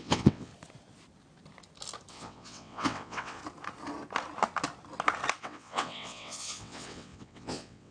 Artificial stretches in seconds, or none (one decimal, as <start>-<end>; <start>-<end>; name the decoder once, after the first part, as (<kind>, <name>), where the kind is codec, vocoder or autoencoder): 0.0-0.5 (vocoder, WaveNeXt); 2.1-3.4; 5.4-7.9

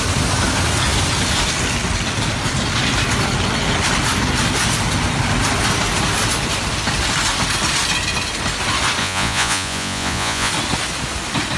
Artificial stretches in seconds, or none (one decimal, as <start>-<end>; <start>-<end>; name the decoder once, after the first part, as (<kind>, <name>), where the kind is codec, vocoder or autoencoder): 9.0-10.5 (vocoder, Vocos)